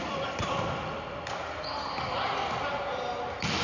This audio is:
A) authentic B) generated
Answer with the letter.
A